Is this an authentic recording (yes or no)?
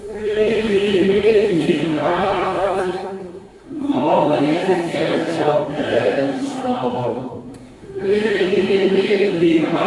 no